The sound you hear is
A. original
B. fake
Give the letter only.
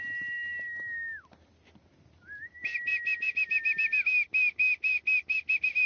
A